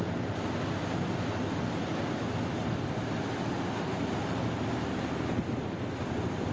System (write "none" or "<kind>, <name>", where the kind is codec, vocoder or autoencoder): none